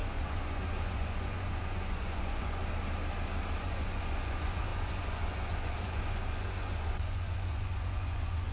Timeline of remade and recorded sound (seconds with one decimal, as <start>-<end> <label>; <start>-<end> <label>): 0.0-2.6 remade; 2.6-3.6 recorded; 3.6-8.5 remade